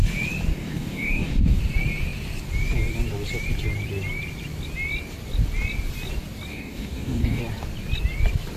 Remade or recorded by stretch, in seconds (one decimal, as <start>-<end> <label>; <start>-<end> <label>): 0.0-0.5 recorded; 0.5-1.6 remade; 1.6-6.5 recorded; 6.5-7.4 remade; 7.4-8.6 recorded